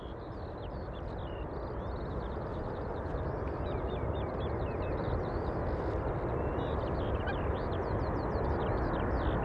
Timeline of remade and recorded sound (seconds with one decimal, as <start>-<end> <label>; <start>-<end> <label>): 0.0-2.5 recorded; 2.5-3.6 remade; 3.6-9.4 recorded